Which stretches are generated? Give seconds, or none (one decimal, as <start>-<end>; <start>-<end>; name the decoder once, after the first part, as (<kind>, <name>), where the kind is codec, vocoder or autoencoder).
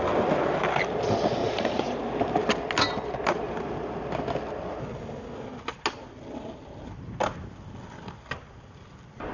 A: 1.4-2.0 (vocoder, Vocos)